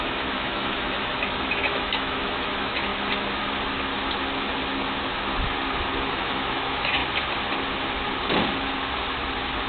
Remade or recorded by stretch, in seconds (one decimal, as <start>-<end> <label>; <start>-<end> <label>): 0.0-2.9 remade; 2.9-6.1 recorded; 6.1-7.0 remade; 7.0-9.7 recorded